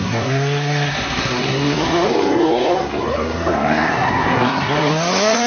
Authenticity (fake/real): fake